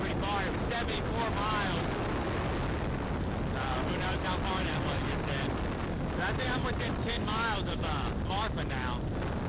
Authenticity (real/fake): real